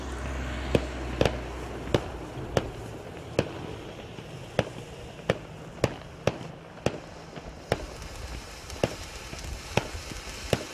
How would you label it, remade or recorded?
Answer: recorded